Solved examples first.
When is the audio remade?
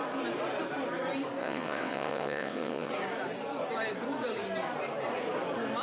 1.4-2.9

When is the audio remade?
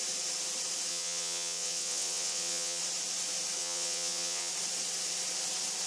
0.9-2.8; 3.6-4.5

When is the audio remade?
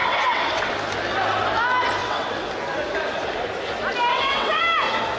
0.0-0.7; 2.0-2.5; 4.1-4.6